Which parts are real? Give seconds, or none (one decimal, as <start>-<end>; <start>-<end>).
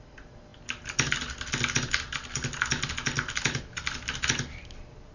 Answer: 0.0-5.1